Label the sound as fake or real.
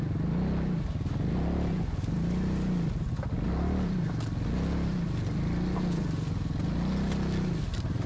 real